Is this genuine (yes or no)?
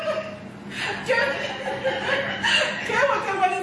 yes